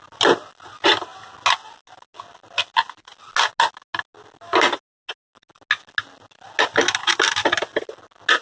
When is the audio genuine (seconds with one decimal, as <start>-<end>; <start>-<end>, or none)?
0.0-8.4